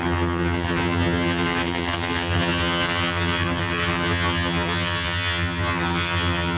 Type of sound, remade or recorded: remade